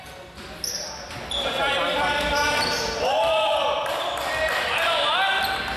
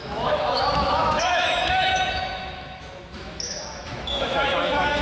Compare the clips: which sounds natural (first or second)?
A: first